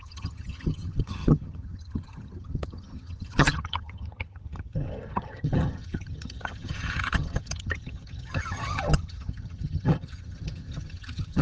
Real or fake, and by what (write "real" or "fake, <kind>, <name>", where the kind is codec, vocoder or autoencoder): fake, vocoder, HiFi-GAN